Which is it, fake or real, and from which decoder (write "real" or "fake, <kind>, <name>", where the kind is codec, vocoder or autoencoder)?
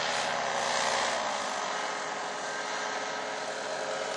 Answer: real